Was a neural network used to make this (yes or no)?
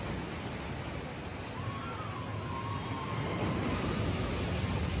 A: no